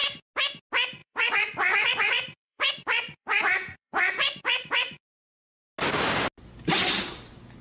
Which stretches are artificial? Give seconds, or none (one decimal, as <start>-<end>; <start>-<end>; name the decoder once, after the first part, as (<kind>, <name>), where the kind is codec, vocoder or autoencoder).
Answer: 1.0-5.6 (vocoder, Vocos)